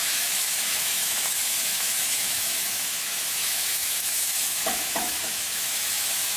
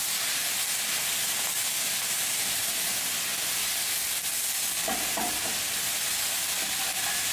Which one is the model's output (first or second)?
first